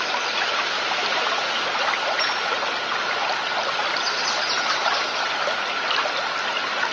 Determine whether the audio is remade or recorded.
recorded